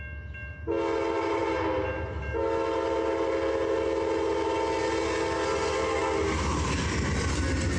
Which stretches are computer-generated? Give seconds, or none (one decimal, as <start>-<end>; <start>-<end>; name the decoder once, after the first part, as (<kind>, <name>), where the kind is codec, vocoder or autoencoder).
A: none